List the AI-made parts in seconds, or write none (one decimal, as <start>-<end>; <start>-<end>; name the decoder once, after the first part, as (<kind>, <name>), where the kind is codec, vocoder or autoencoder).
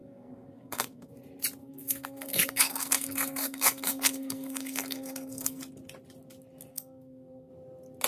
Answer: 0.0-1.1 (codec, SNAC); 1.6-5.6; 6.7-7.5